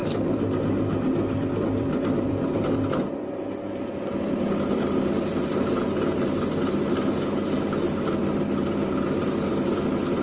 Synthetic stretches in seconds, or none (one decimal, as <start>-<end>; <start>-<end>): 0.0-10.2